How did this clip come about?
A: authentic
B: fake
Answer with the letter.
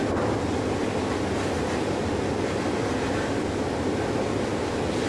A